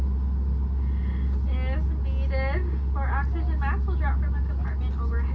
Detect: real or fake real